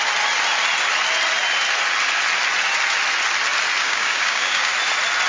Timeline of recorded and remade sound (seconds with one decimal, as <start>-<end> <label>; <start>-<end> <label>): 0.0-3.8 recorded; 3.8-4.7 remade; 4.7-5.3 recorded